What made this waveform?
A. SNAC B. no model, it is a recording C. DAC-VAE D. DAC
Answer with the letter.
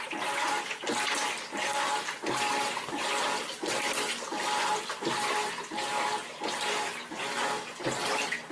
B